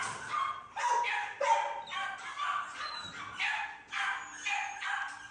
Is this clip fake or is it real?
real